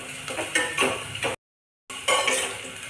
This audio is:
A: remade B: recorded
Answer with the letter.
B